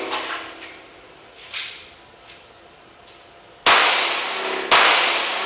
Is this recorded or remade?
recorded